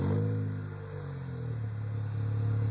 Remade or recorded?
recorded